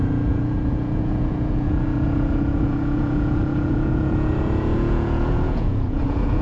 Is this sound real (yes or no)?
no